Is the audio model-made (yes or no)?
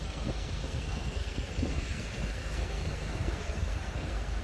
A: yes